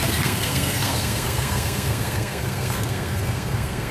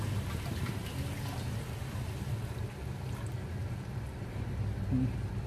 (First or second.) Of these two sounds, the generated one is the first